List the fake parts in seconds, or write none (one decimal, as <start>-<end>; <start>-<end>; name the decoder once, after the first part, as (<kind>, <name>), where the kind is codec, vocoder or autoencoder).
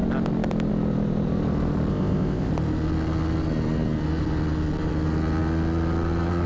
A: 1.9-2.5 (codec, ZipCodec)